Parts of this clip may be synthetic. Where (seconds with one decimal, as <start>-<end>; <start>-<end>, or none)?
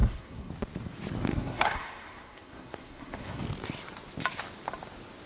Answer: 0.0-0.5; 1.3-3.4